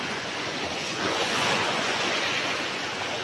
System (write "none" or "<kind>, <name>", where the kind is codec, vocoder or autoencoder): vocoder, Vocos